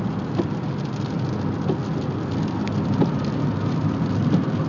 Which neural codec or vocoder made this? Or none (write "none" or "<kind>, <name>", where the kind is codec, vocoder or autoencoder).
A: none